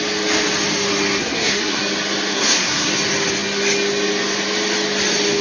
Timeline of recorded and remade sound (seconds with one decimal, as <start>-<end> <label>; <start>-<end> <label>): 0.0-1.2 recorded; 1.2-1.8 remade; 1.8-2.3 recorded; 2.3-2.9 remade; 2.9-5.4 recorded